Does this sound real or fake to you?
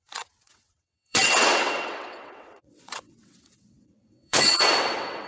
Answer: fake